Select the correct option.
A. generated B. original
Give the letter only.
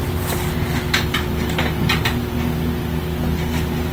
A